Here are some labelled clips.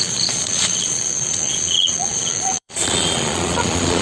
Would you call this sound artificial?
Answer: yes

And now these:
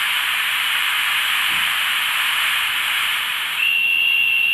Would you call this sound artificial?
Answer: yes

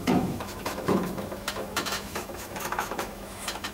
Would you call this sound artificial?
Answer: yes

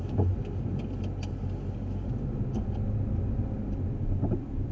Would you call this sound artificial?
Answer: no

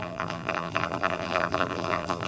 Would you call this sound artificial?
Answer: yes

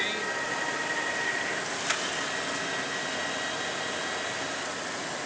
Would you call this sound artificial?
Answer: no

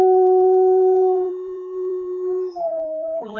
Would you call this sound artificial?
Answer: yes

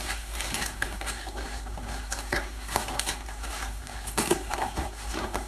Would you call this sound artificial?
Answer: yes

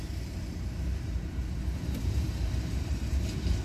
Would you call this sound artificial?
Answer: yes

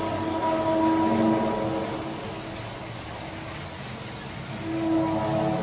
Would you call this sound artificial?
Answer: no